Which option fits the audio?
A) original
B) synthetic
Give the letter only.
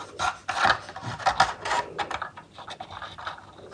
A